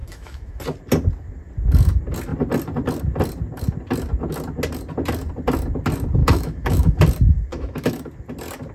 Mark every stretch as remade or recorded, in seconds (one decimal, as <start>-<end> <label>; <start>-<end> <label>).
0.0-0.6 remade; 0.6-6.2 recorded; 6.2-7.0 remade; 7.0-7.5 recorded; 7.5-8.0 remade; 8.0-8.7 recorded